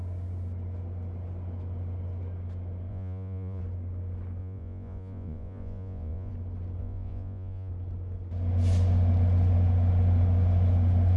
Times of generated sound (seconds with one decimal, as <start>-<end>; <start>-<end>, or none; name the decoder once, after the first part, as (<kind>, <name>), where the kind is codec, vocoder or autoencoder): 2.9-3.6 (vocoder, Vocos); 4.4-6.3; 6.8-7.7